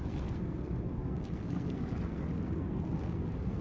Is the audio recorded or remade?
remade